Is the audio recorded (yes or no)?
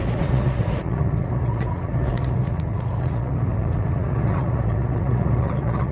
no